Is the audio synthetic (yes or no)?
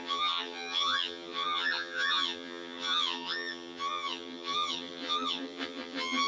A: yes